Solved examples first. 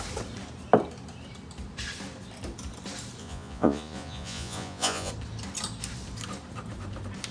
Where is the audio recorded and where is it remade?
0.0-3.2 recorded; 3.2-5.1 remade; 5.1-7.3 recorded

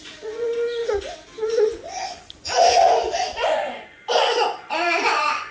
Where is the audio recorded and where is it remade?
0.0-0.8 remade; 0.8-1.6 recorded; 1.6-5.5 remade

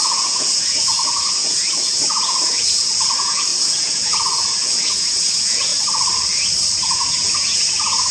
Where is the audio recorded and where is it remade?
0.0-5.7 remade; 5.7-6.9 recorded; 6.9-8.1 remade

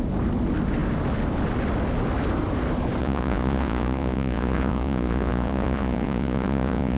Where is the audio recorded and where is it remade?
0.0-3.0 recorded; 3.0-7.0 remade

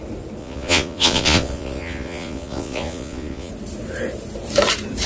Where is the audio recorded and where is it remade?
0.0-0.4 recorded; 0.4-3.5 remade; 3.5-5.1 recorded

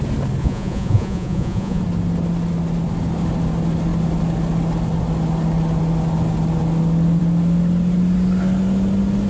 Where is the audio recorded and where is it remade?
0.0-0.4 recorded; 0.4-1.8 remade; 1.8-9.3 recorded